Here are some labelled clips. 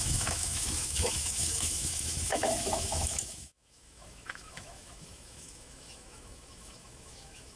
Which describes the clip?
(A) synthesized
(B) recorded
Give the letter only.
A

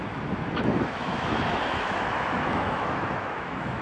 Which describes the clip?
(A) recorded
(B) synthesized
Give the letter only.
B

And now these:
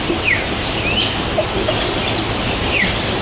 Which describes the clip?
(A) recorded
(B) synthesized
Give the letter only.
A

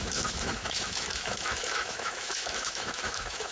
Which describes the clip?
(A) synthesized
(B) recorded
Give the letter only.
A